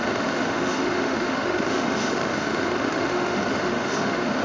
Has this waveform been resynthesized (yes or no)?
yes